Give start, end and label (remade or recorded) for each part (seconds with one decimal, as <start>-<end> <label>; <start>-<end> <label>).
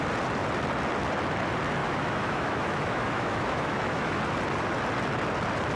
0.0-1.8 recorded; 1.8-4.2 remade; 4.2-5.8 recorded